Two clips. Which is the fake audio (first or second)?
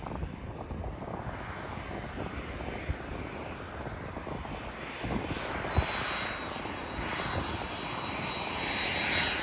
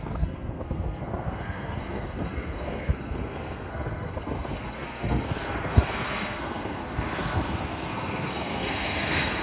second